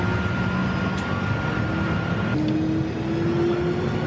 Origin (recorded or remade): recorded